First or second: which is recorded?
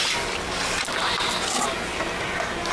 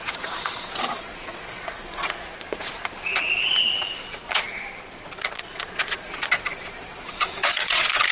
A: first